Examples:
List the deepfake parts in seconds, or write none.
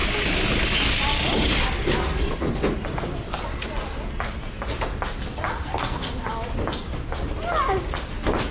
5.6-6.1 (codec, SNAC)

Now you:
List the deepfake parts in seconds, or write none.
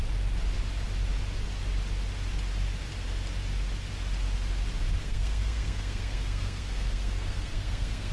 5.0-8.1 (codec, SNAC)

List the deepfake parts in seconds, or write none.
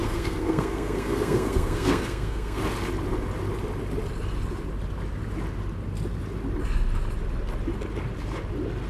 0.0-2.6 (codec, SNAC)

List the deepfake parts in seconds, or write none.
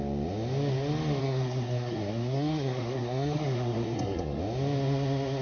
1.2-4.4 (codec, SNAC)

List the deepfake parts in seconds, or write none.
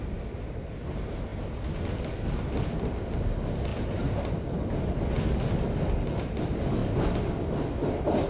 none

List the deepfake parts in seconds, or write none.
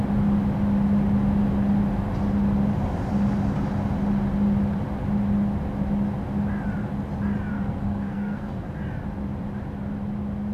7.5-8.7 (codec, SNAC)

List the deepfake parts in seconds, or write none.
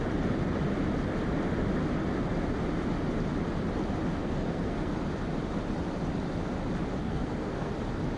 4.2-4.9 (codec, SNAC); 7.0-7.7